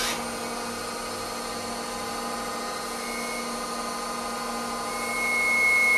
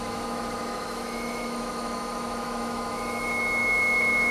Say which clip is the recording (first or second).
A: first